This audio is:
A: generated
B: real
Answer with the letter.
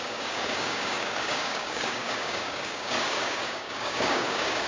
A